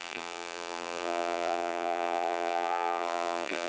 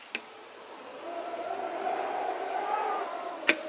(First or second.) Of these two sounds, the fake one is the first